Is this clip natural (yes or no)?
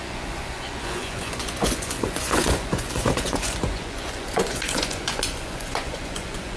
no